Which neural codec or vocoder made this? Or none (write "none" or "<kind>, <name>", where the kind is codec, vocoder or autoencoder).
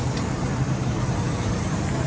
vocoder, BigVGAN v2